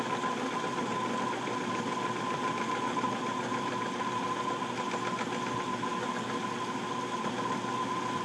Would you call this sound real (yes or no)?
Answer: yes